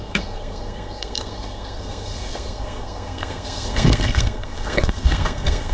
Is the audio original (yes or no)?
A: no